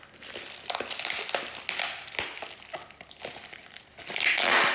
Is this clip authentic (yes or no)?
yes